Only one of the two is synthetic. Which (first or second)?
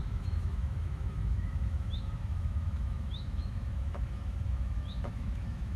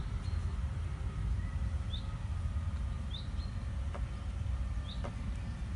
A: first